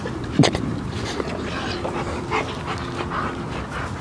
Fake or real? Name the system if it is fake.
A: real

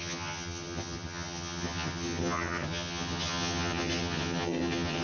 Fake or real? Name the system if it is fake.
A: fake, vocoder, HiFi-GAN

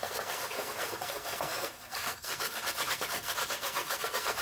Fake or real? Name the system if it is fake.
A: fake, codec, SNAC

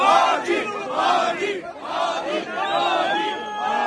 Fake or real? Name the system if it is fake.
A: real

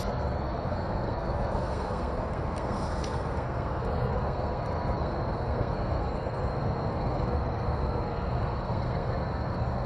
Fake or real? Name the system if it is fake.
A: fake, codec, SNAC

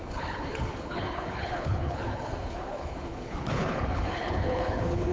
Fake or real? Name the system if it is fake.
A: fake, codec, HILCodec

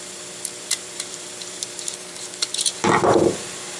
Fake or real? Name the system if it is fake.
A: fake, vocoder, BigVGAN v2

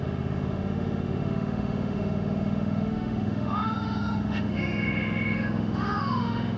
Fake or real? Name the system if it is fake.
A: fake, autoencoder, DAC-VAE